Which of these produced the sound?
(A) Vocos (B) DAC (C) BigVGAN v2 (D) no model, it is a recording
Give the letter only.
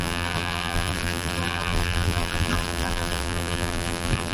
C